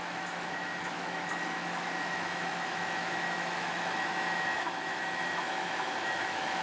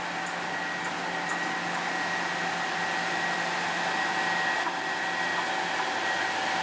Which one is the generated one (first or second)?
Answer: first